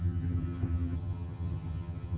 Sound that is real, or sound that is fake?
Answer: fake